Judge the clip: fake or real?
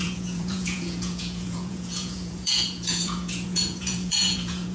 fake